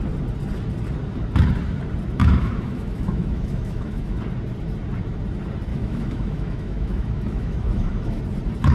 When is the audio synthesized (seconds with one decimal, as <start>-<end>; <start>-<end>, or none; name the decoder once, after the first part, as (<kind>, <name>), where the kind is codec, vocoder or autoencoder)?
2.2-4.2 (autoencoder, DAC-VAE); 5.7-8.2